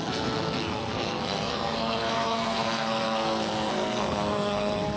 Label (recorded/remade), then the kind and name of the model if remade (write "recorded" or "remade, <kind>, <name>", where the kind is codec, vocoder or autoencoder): remade, codec, SNAC